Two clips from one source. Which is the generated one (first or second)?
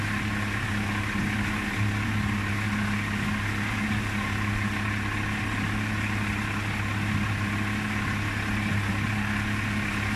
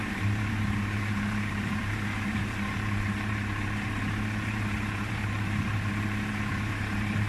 second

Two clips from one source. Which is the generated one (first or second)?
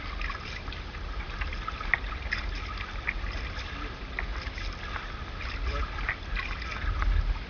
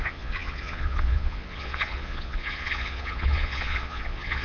second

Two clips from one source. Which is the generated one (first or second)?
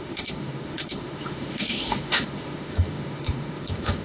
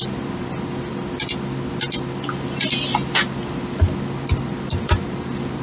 first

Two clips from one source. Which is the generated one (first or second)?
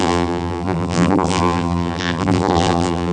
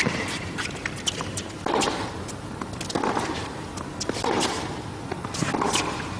first